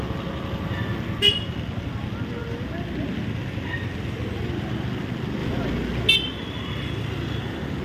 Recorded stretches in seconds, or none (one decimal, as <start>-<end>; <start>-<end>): 0.0-7.8